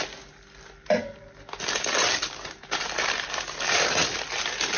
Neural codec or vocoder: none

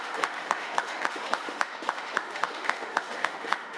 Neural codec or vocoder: autoencoder, DAC-VAE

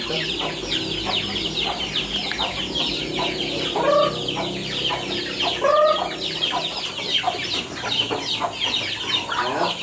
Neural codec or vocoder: none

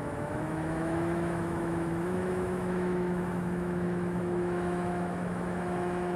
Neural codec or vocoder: autoencoder, DAC-VAE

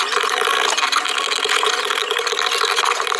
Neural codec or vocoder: none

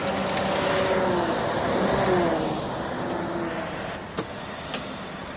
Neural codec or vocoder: none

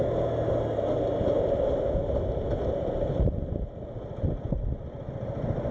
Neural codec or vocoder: none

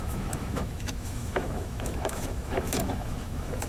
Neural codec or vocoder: autoencoder, DAC-VAE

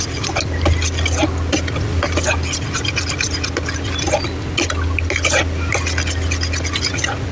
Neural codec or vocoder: none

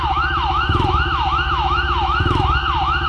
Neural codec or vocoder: autoencoder, DAC-VAE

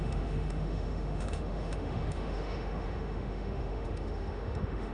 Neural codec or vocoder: autoencoder, DAC-VAE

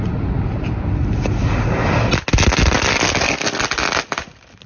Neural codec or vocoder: none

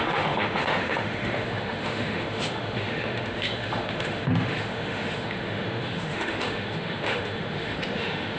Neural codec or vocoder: autoencoder, DAC-VAE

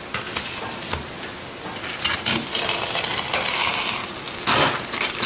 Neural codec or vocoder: none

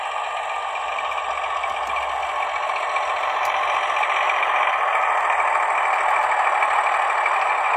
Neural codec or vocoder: none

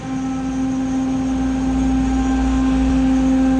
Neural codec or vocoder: none